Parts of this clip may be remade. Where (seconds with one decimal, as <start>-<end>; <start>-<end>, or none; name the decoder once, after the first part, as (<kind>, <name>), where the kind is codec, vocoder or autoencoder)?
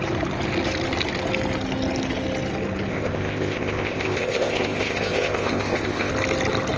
2.9-6.1 (codec, ZipCodec)